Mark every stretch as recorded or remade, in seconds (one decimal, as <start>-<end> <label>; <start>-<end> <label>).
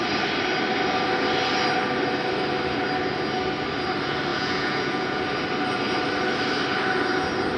0.0-4.3 recorded; 4.3-5.2 remade; 5.2-7.6 recorded